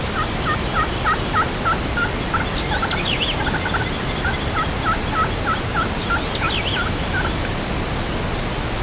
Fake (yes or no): no